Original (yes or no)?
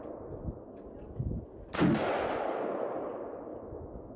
yes